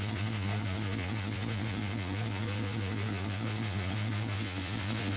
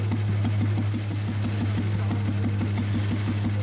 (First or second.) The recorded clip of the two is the second